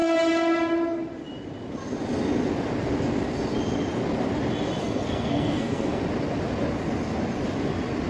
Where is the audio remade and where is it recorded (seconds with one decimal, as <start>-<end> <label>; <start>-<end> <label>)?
0.0-4.8 recorded; 4.8-6.0 remade; 6.0-8.1 recorded